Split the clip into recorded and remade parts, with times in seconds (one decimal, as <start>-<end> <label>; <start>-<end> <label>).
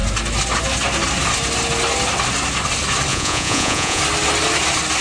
0.0-3.1 recorded; 3.1-4.0 remade; 4.0-5.0 recorded